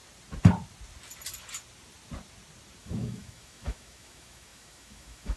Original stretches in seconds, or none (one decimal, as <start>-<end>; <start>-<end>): 0.0-2.8